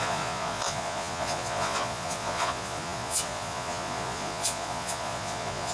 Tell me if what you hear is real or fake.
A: fake